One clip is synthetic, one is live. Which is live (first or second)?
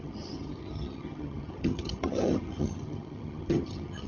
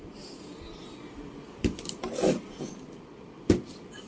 second